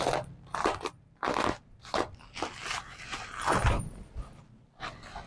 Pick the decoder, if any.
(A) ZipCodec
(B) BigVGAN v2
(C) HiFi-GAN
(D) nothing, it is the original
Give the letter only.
D